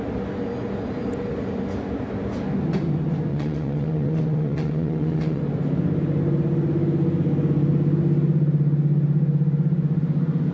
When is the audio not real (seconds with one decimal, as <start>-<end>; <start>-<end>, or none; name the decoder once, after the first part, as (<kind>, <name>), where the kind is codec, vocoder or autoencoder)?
3.3-5.4 (vocoder, WaveNeXt)